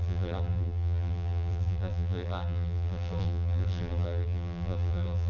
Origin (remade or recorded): remade